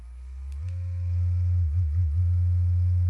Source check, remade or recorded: recorded